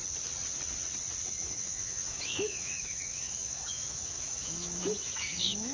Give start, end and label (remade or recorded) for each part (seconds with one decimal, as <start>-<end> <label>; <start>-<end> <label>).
0.0-1.3 recorded; 1.3-5.7 remade